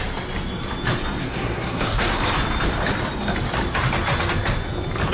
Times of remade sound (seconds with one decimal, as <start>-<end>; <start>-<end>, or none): 1.2-2.2